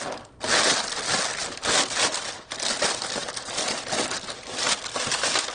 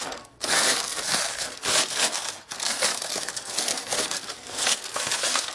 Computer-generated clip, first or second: second